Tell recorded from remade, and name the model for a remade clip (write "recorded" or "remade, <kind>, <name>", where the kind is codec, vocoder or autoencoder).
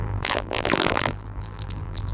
remade, vocoder, BigVGAN v2